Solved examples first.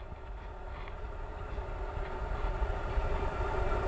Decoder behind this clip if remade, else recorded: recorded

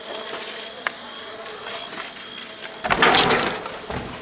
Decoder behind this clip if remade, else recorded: recorded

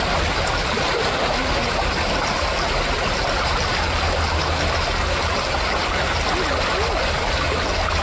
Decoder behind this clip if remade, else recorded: recorded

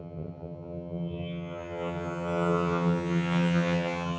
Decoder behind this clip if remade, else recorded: remade, vocoder, HiFi-GAN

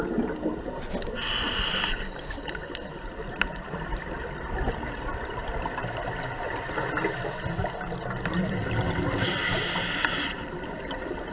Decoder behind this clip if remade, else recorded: recorded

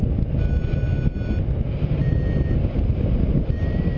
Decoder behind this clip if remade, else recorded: recorded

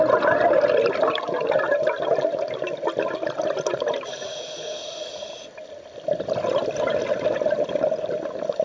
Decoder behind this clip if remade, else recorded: recorded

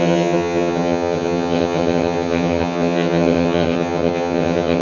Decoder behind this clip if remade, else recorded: remade, vocoder, HiFi-GAN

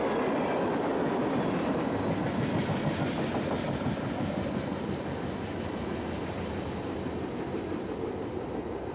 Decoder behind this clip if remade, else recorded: recorded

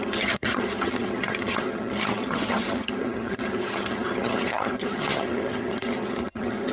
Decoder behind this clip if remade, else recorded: remade, vocoder, HiFi-GAN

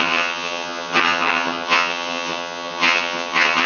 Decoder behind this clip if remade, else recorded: remade, vocoder, HiFi-GAN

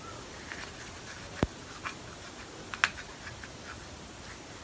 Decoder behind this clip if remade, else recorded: recorded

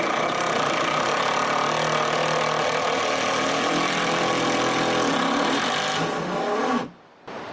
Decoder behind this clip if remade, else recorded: recorded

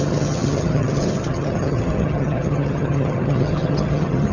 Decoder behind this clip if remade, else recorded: remade, vocoder, HiFi-GAN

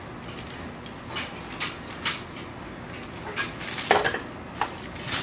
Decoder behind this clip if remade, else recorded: recorded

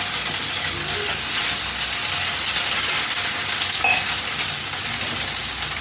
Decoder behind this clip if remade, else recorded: recorded